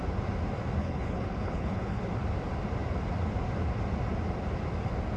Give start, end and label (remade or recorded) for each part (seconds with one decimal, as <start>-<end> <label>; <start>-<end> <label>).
0.0-0.8 recorded; 0.8-2.0 remade; 2.0-5.2 recorded